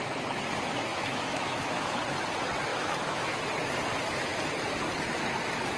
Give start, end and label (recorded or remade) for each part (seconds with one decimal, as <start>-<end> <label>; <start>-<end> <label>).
0.0-0.9 recorded; 0.9-2.0 remade; 2.0-2.7 recorded; 2.7-3.4 remade; 3.4-5.8 recorded